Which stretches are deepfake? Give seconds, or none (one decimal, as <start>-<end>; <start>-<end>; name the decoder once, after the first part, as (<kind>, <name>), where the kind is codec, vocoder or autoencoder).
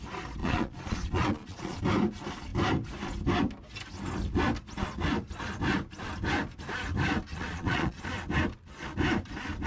0.4-1.8 (vocoder, Vocos); 7.3-8.0